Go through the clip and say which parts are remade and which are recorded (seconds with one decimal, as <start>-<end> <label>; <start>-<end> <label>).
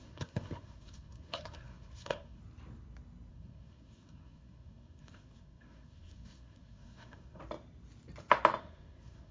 0.0-2.4 remade; 2.4-3.3 recorded; 3.3-7.4 remade; 7.4-8.6 recorded; 8.6-9.3 remade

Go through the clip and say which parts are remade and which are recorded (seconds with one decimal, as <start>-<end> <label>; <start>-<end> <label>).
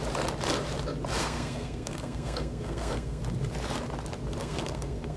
0.0-1.2 recorded; 1.2-3.2 remade; 3.2-4.4 recorded; 4.4-5.2 remade